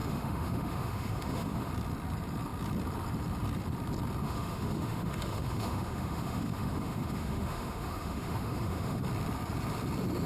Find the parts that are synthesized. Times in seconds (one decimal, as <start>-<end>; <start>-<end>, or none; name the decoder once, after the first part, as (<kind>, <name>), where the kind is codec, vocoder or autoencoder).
0.0-1.7 (autoencoder, DAC-VAE); 4.2-9.0